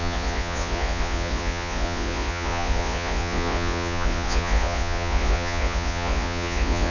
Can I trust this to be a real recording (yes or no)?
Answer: no